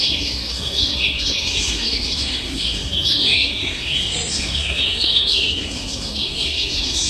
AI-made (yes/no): yes